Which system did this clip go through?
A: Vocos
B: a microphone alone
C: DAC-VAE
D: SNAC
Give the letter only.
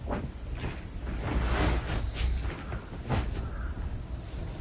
B